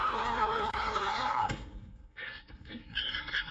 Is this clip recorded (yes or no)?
no